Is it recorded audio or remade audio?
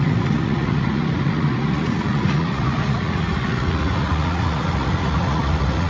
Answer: remade